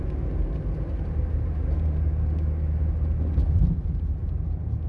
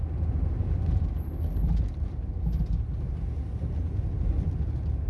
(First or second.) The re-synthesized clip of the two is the second